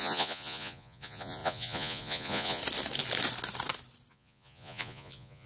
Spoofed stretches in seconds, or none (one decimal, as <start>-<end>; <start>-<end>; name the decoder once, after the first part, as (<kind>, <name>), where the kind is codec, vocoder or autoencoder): 0.0-2.6 (vocoder, Vocos); 4.1-5.5